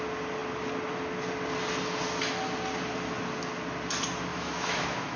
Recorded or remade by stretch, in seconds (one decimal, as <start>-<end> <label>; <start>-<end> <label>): 0.0-4.3 recorded; 4.3-5.2 remade